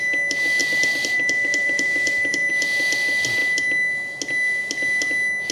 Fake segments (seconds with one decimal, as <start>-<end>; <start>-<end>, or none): 0.6-2.5